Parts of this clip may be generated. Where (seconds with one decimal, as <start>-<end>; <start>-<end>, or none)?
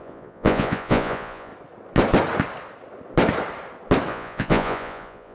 0.0-1.5; 4.1-5.3